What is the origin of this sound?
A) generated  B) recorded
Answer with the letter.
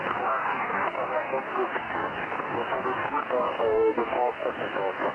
A